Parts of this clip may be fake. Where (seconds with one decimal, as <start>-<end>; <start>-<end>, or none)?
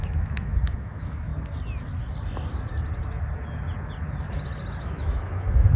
0.0-1.3; 4.8-5.8